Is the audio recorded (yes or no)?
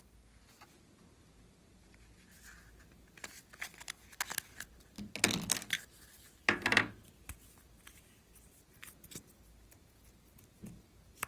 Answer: yes